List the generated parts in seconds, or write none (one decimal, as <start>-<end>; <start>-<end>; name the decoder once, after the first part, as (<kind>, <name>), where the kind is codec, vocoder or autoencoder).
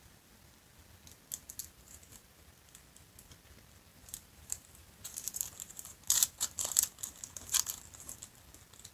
1.6-2.5 (vocoder, BigVGAN v2); 3.9-7.8